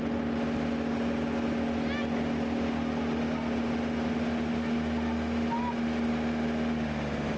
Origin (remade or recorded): recorded